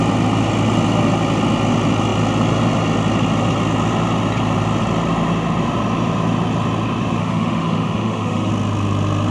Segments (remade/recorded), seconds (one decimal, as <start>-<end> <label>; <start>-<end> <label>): 0.0-7.2 recorded; 7.2-8.5 remade; 8.5-9.3 recorded